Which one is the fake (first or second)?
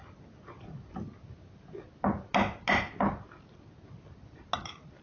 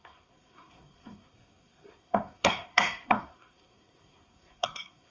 second